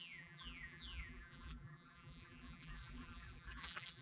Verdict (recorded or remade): remade